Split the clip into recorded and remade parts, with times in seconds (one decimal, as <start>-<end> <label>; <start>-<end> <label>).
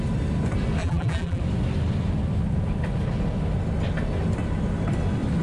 0.0-0.8 recorded; 0.8-1.4 remade; 1.4-5.4 recorded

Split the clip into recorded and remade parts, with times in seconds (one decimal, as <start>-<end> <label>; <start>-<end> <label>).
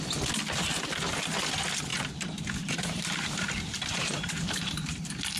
0.0-1.9 recorded; 1.9-4.9 remade; 4.9-5.4 recorded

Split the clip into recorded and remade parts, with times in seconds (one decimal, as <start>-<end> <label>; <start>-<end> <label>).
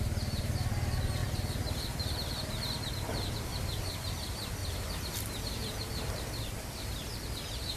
0.0-4.6 remade; 4.6-6.4 recorded; 6.4-7.8 remade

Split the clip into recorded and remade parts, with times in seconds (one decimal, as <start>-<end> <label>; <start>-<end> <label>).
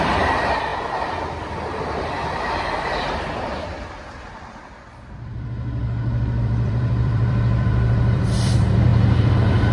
0.0-0.7 remade; 0.7-2.5 recorded; 2.5-5.8 remade; 5.8-6.4 recorded; 6.4-9.7 remade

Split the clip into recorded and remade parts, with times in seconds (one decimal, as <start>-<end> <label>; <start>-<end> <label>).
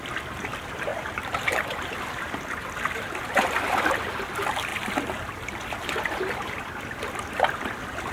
0.0-0.9 recorded; 0.9-2.5 remade; 2.5-4.7 recorded; 4.7-7.0 remade; 7.0-8.1 recorded